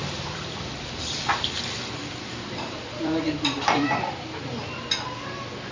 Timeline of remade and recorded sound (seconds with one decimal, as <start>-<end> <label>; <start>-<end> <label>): 0.0-0.7 remade; 0.7-2.0 recorded; 2.0-4.7 remade; 4.7-5.7 recorded